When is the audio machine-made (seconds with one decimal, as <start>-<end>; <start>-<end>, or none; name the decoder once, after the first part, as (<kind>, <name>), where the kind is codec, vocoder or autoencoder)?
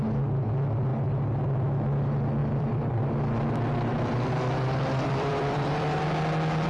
2.4-3.1 (vocoder, BigVGAN v2); 3.9-6.0